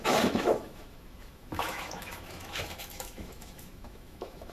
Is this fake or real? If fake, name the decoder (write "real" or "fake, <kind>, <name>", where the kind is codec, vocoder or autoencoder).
fake, autoencoder, DAC-VAE